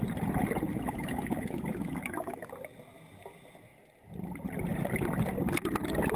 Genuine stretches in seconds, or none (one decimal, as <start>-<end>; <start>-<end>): 0.0-0.7; 2.5-6.2